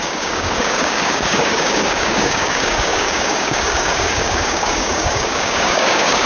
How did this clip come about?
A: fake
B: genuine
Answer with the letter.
A